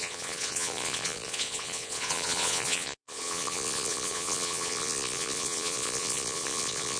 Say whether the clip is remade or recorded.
remade